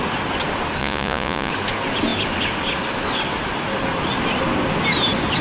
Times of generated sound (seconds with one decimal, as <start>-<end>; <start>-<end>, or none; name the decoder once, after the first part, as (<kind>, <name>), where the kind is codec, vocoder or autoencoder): 0.8-1.5 (vocoder, Vocos)